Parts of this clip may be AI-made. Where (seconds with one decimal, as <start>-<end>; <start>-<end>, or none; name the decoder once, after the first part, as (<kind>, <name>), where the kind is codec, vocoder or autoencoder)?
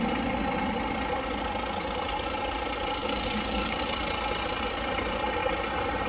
3.0-3.8 (codec, DAC)